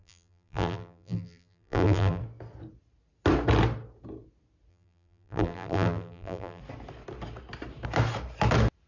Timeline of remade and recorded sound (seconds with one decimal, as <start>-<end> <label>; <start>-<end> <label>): 0.0-2.2 remade; 2.2-4.7 recorded; 4.7-6.6 remade; 6.6-8.9 recorded

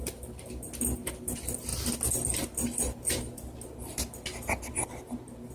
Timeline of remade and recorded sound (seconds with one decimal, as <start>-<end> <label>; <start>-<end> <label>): 0.0-5.5 recorded

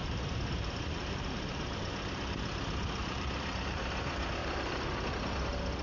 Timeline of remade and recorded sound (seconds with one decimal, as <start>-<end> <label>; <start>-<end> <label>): 0.0-1.9 remade; 1.9-3.0 recorded; 3.0-3.8 remade; 3.8-4.4 recorded; 4.4-4.9 remade; 4.9-5.8 recorded